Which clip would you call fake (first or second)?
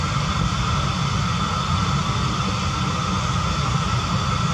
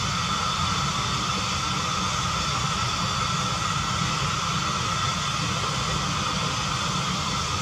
first